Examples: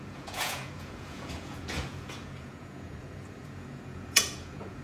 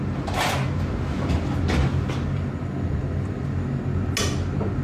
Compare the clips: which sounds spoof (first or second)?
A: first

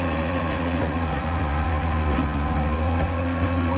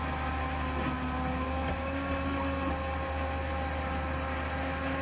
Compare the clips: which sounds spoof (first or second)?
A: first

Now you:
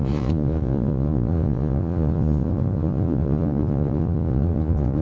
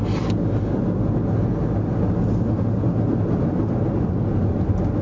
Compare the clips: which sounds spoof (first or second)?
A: first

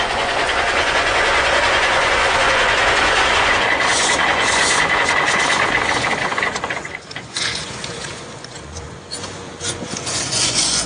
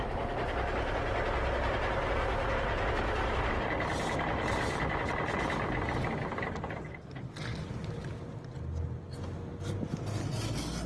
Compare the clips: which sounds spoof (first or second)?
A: first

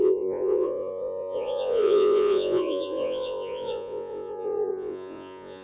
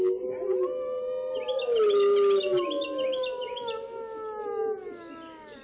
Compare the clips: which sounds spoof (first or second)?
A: first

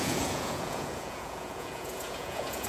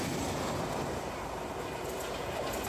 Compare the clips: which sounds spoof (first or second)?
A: first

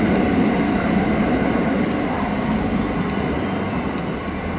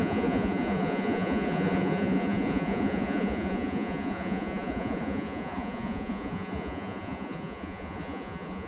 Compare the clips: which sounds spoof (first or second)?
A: second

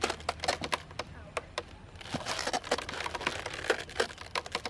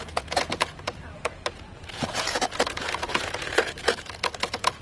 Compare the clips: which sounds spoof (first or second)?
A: second